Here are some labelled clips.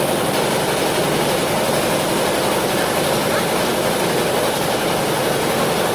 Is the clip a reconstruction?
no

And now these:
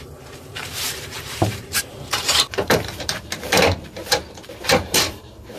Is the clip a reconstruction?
yes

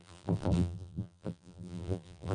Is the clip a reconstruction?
yes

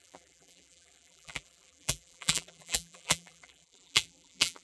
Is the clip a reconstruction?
yes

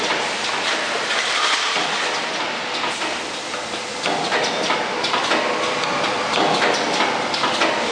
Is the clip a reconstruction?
yes